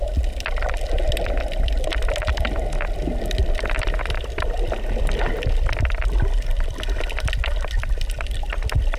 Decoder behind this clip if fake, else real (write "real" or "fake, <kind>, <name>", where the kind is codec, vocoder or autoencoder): real